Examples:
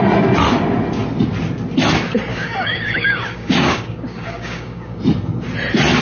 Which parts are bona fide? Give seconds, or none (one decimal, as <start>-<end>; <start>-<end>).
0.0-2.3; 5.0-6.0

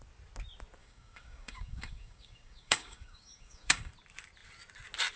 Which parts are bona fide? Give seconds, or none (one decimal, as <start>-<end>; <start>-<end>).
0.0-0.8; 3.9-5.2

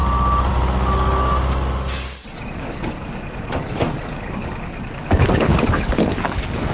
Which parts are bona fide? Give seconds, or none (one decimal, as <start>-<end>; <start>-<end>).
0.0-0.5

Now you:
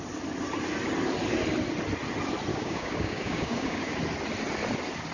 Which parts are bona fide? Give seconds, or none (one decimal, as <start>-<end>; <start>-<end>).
0.0-2.5; 4.0-5.1

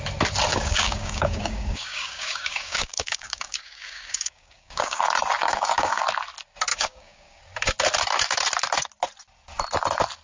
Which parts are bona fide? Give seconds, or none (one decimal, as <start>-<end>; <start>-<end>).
0.0-0.5; 5.0-5.4; 6.0-6.7; 7.4-10.2